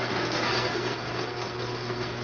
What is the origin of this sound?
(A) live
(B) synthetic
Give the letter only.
B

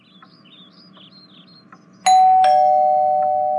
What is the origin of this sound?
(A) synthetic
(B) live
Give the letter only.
B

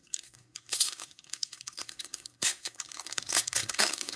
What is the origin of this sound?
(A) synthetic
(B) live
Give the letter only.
A